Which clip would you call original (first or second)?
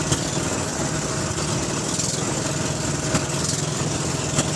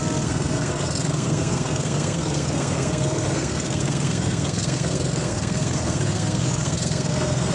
first